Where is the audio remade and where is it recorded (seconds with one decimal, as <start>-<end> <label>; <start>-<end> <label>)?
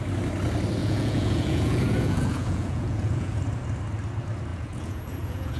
0.0-0.8 recorded; 0.8-3.4 remade; 3.4-4.5 recorded; 4.5-5.6 remade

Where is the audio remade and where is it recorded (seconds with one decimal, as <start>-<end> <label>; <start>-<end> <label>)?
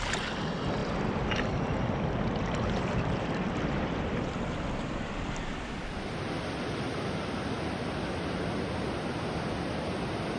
0.0-0.8 recorded; 0.8-5.1 remade; 5.1-10.4 recorded